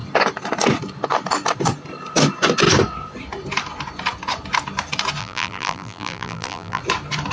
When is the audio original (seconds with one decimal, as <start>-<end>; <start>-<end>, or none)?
0.0-5.2; 6.8-7.3